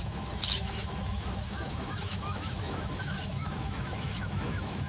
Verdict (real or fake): fake